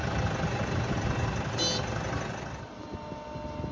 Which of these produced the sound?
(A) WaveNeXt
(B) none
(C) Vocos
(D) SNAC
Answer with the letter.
B